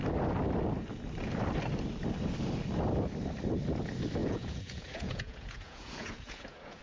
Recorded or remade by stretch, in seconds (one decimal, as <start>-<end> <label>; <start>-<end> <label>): 0.0-4.2 recorded; 4.2-6.8 remade